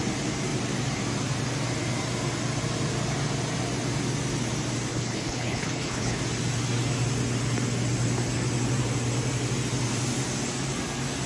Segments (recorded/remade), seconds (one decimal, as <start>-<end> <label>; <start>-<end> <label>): 0.0-4.9 recorded; 4.9-6.2 remade; 6.2-11.3 recorded